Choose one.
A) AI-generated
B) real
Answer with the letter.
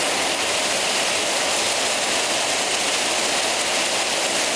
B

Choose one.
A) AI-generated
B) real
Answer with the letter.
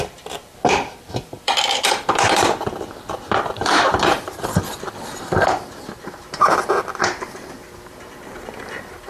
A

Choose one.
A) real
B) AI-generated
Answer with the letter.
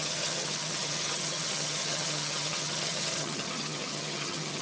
B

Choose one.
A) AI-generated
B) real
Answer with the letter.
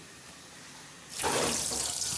A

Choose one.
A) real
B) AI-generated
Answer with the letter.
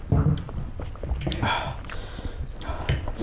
A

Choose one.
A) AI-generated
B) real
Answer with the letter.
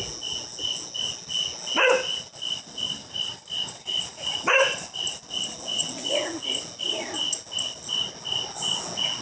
B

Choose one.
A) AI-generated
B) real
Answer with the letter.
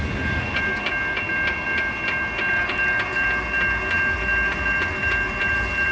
B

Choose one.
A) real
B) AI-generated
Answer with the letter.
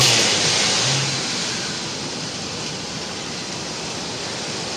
A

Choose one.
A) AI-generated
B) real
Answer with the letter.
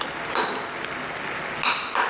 B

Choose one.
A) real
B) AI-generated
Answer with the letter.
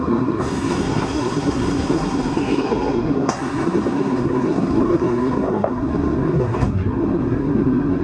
B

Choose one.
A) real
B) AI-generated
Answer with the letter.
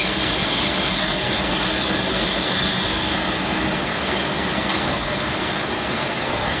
B